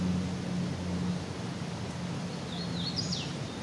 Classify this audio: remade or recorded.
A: recorded